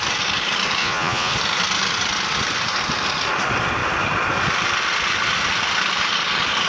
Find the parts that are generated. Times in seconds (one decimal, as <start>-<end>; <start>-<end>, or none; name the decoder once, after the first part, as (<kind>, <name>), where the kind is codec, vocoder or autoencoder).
0.8-1.3 (vocoder, Vocos)

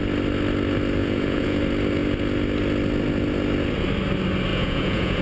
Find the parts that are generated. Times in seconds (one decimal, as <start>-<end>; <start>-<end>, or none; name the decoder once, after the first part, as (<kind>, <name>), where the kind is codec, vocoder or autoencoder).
1.0-1.6 (vocoder, Vocos); 4.5-5.2

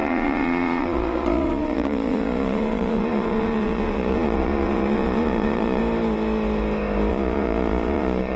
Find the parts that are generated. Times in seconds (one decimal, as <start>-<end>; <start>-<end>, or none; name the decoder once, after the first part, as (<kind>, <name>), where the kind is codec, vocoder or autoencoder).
0.0-5.8 (vocoder, Vocos); 7.1-8.4

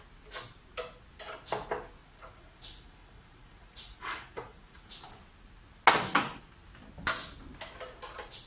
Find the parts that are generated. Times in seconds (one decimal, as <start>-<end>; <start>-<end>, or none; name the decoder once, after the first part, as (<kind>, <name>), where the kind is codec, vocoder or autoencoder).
2.0-4.9 (vocoder, Vocos)